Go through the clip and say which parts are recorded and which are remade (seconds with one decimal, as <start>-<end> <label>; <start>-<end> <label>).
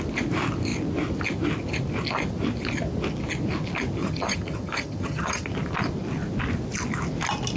0.0-4.0 recorded; 4.0-5.5 remade; 5.5-7.6 recorded